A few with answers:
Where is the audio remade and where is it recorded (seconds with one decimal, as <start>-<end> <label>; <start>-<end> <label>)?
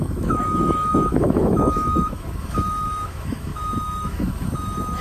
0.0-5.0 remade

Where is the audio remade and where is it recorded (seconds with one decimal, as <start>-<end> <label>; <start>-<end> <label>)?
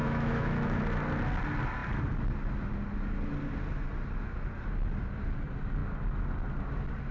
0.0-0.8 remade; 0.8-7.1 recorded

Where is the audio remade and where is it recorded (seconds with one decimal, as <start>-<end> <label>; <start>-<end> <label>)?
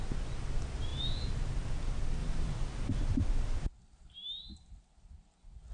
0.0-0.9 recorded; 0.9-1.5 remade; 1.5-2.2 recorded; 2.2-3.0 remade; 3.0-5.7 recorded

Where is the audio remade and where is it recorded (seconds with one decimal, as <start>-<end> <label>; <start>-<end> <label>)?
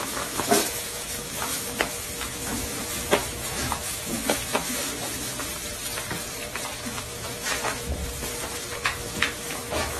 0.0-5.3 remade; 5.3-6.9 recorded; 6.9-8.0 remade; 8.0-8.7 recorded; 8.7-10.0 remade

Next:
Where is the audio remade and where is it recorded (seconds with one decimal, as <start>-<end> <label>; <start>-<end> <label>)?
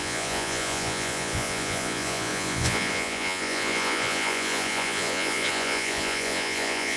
0.0-7.0 remade